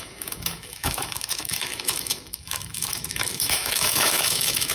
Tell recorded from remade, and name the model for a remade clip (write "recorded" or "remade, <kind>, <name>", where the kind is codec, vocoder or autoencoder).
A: remade, autoencoder, DAC-VAE